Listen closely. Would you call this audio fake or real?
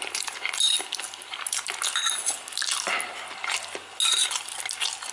real